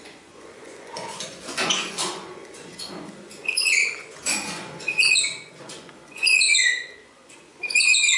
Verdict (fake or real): fake